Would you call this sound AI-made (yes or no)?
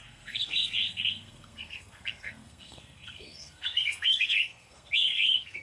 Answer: yes